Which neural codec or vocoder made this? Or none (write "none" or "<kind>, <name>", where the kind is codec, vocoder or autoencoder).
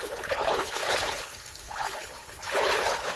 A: codec, HILCodec